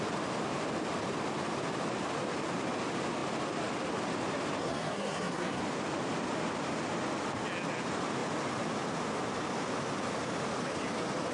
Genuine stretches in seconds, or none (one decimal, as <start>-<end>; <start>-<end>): 0.0-4.6; 5.6-11.3